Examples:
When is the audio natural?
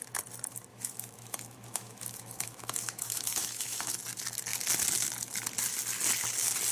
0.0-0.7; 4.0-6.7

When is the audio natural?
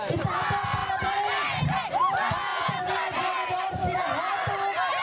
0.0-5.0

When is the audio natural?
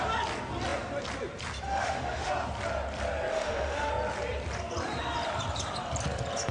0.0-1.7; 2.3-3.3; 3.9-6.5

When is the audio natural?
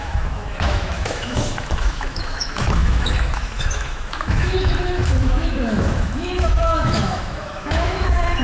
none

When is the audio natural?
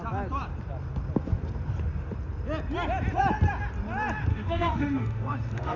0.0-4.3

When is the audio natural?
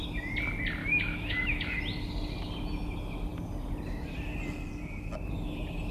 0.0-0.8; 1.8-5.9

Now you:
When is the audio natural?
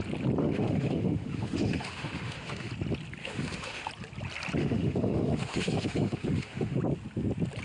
0.0-0.4; 2.7-3.2; 3.9-4.6; 6.8-7.6